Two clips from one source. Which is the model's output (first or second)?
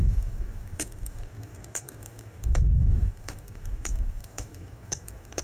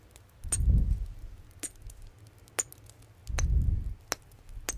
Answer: first